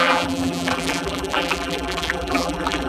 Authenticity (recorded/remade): remade